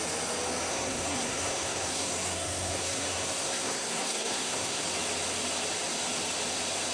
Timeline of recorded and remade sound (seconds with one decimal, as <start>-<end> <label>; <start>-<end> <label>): 0.0-0.7 recorded; 0.7-4.8 remade; 4.8-6.9 recorded